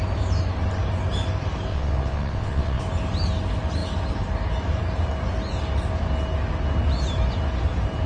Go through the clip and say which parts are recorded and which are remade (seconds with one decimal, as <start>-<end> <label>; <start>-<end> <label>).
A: 0.0-1.7 recorded; 1.7-2.8 remade; 2.8-8.1 recorded